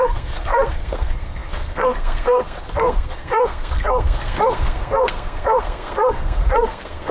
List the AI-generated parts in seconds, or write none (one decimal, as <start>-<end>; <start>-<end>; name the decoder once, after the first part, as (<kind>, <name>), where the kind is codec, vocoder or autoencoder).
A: 0.0-7.1 (codec, SNAC)